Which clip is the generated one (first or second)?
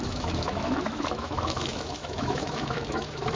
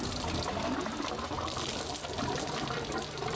first